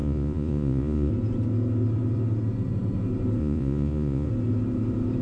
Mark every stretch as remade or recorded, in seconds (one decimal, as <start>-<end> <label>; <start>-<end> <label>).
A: 0.0-1.1 remade; 1.1-3.4 recorded; 3.4-4.3 remade; 4.3-5.2 recorded